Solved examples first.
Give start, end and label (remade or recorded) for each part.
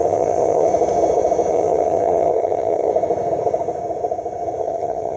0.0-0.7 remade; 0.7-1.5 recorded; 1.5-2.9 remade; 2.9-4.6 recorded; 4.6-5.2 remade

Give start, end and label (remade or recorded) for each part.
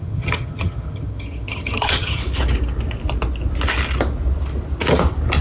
0.0-2.2 remade; 2.2-5.4 recorded